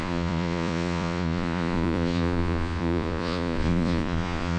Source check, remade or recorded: remade